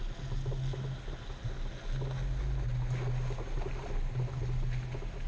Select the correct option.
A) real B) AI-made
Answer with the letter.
A